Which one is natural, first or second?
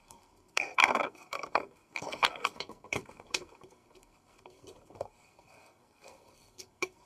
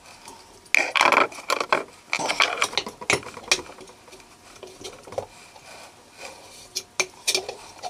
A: second